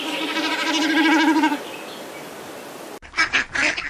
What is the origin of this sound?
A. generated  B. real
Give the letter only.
B